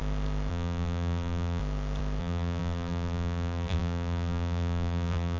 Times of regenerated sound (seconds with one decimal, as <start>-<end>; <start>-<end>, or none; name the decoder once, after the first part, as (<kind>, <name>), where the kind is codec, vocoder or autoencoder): 0.5-1.6 (vocoder, BigVGAN v2); 2.2-5.4